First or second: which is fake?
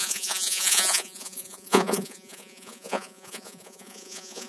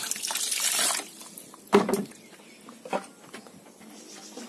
first